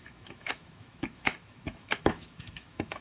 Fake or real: fake